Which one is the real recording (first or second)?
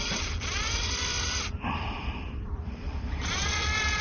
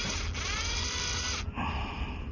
second